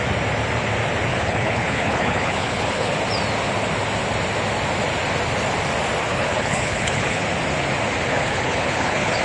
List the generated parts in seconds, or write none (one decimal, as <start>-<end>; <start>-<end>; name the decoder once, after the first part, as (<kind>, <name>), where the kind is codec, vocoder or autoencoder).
1.1-2.9 (codec, HILCodec); 6.1-7.2; 8.1-9.2